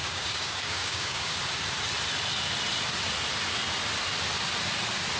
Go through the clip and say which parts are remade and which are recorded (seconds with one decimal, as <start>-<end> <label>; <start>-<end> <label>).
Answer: 0.0-1.4 remade; 1.4-5.2 recorded